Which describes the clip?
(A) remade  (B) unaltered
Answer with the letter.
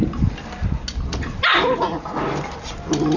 B